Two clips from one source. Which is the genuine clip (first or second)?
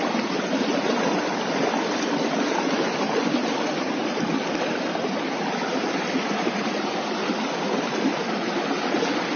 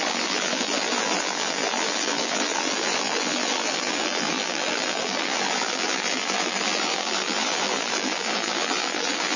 first